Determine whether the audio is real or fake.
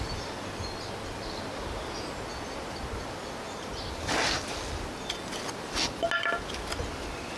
real